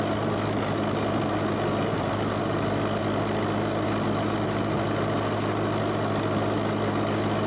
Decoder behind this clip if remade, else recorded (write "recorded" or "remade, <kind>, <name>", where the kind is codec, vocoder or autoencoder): recorded